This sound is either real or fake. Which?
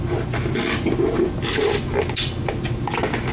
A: real